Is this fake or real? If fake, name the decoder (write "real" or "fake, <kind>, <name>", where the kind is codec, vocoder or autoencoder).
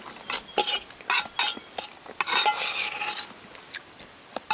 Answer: real